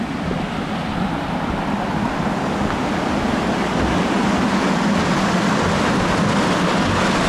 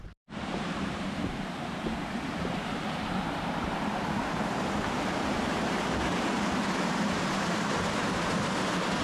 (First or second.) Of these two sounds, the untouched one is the first